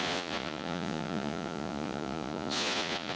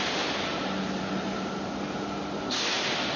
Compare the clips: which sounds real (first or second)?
second